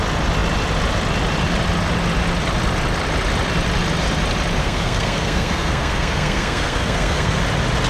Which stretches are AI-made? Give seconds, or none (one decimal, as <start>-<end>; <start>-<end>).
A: 4.6-7.4